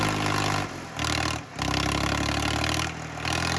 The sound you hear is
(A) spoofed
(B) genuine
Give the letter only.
B